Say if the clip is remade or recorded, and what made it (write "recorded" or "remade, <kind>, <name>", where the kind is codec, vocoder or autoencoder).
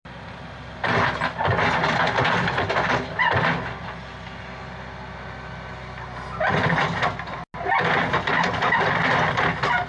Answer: recorded